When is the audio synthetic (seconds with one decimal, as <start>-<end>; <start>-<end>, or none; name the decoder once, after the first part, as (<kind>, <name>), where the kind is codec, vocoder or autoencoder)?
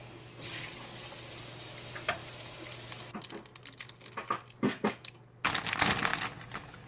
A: 0.7-1.4 (vocoder, BigVGAN v2); 2.2-2.9